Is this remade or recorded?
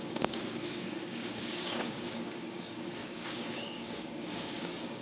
remade